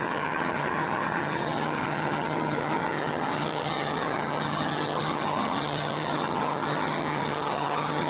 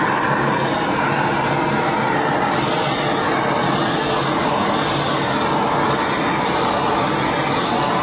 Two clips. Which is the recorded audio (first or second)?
second